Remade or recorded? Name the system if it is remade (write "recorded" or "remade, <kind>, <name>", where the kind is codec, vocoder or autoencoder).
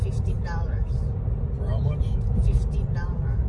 remade, vocoder, BigVGAN v2